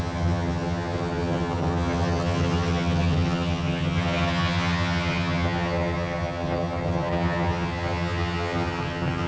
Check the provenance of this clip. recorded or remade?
remade